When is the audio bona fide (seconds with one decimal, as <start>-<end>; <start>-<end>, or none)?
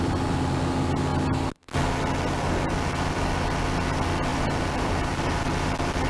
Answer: 0.0-4.3; 5.5-6.1